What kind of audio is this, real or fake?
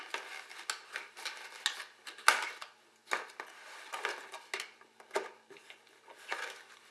real